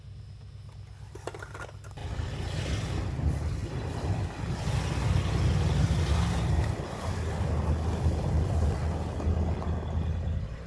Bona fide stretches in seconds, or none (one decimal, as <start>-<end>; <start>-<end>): 0.0-10.7